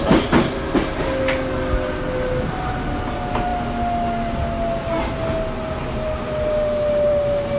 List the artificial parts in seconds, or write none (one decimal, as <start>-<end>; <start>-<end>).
none